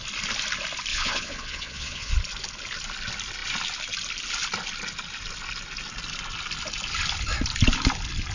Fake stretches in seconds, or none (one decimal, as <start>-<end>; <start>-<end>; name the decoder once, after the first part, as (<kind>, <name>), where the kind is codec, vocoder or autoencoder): 0.9-2.1 (vocoder, Vocos)